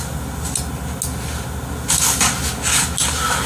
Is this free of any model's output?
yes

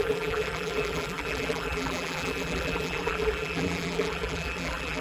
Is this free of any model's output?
no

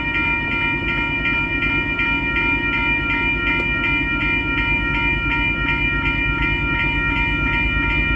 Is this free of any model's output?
yes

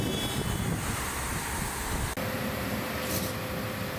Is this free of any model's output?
yes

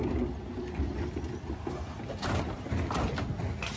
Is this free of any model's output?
yes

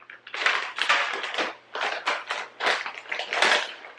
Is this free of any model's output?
yes